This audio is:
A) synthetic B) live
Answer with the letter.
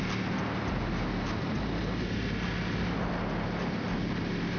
B